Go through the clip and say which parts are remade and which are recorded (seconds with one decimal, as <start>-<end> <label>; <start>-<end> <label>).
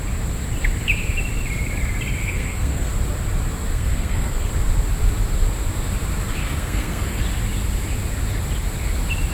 0.0-2.2 recorded; 2.2-2.9 remade; 2.9-3.7 recorded; 3.7-4.5 remade; 4.5-6.4 recorded; 6.4-7.2 remade; 7.2-9.3 recorded